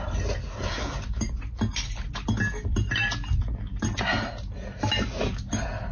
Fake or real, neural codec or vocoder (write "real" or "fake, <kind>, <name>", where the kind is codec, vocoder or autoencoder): real